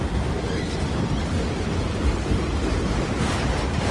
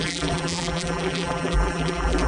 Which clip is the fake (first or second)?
second